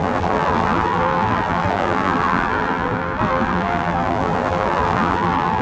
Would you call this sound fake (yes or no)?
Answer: yes